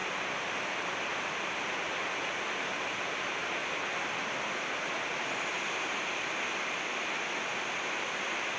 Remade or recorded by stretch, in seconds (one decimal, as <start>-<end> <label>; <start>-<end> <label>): 0.0-8.6 recorded